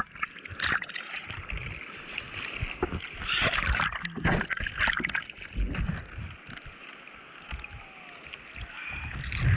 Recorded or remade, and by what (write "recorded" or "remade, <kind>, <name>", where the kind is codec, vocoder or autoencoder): recorded